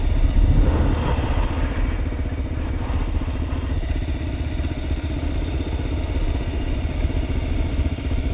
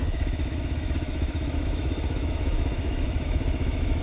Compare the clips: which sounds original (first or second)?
first